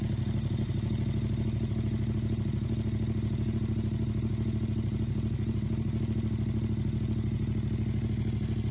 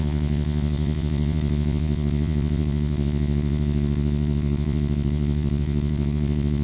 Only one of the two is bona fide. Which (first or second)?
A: first